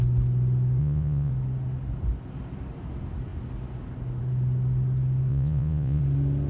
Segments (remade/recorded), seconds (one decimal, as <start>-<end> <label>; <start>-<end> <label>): 0.0-0.8 recorded; 0.8-1.3 remade; 1.3-5.3 recorded; 5.3-6.0 remade; 6.0-6.5 recorded